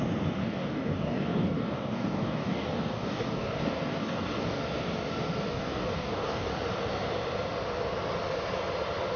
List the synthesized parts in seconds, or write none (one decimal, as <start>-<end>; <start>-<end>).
0.4-4.6; 5.5-6.5